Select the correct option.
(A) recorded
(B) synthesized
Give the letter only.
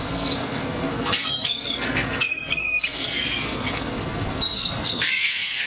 B